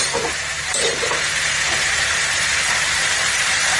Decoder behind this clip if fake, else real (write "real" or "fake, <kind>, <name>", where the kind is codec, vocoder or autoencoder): fake, vocoder, BigVGAN v2